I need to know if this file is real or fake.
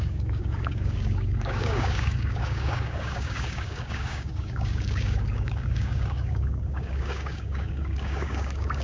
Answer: fake